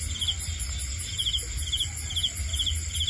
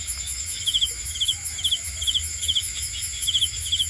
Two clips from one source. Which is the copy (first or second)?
second